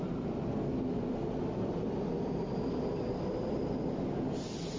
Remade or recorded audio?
recorded